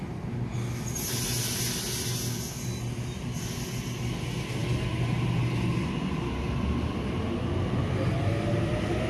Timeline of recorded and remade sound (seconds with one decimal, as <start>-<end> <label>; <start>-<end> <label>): 0.0-9.1 recorded

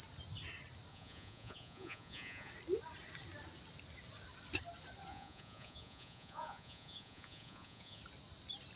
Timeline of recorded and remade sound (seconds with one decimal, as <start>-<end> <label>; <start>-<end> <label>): 0.0-0.9 recorded; 0.9-2.5 remade; 2.5-5.1 recorded; 5.1-8.0 remade; 8.0-8.8 recorded

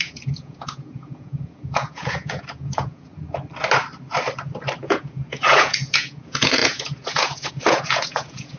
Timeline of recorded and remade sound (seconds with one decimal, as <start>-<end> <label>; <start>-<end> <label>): 0.0-3.1 remade; 3.1-4.8 recorded; 4.8-8.6 remade

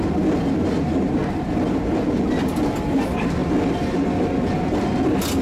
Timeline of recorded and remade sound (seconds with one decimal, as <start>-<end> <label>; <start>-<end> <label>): 0.0-5.4 recorded

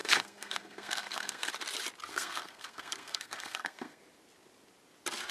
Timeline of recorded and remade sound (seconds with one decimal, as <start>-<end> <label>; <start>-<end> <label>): 0.0-1.5 remade; 1.5-2.1 recorded; 2.1-4.0 remade; 4.0-5.3 recorded

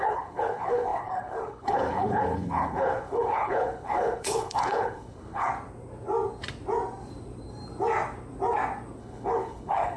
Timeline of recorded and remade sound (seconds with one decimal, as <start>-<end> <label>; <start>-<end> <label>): 0.0-5.5 remade; 5.5-9.0 recorded; 9.0-10.0 remade